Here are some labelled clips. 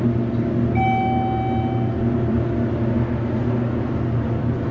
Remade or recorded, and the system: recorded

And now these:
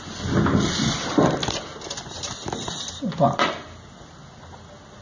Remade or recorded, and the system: recorded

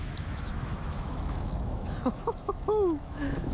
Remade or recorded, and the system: remade, autoencoder, DAC-VAE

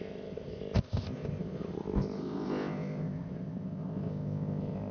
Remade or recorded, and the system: remade, codec, ZipCodec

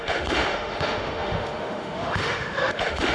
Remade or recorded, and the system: remade, autoencoder, DAC-VAE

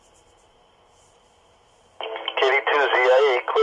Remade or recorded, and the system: recorded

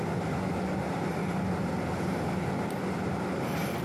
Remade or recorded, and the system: remade, vocoder, BigVGAN v2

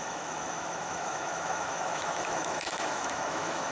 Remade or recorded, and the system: remade, autoencoder, DAC-VAE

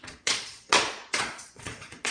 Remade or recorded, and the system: remade, vocoder, Vocos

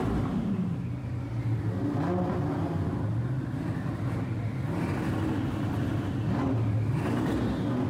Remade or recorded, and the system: recorded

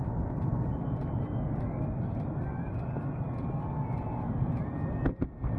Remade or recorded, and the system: recorded